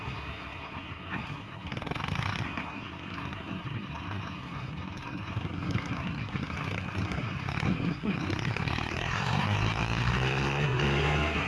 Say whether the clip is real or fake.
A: fake